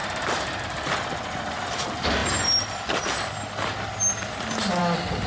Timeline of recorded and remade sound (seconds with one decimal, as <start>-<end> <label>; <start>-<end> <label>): 0.0-5.3 recorded